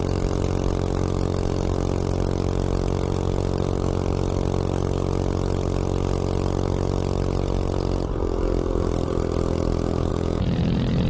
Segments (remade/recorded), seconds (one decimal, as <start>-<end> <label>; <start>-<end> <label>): 0.0-10.1 recorded; 10.1-11.1 remade